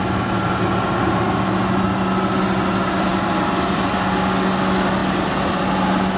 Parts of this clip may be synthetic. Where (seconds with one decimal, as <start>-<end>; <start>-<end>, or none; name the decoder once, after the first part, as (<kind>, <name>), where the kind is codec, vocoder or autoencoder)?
none